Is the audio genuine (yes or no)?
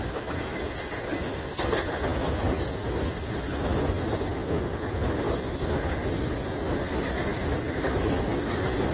yes